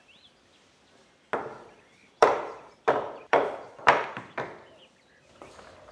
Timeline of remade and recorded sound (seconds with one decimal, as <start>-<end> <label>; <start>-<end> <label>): 0.0-1.5 recorded; 1.5-4.2 remade; 4.2-5.9 recorded